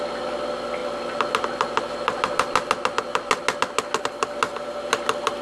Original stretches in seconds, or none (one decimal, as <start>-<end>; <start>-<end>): 0.0-5.4